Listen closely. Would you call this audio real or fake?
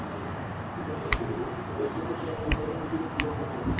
real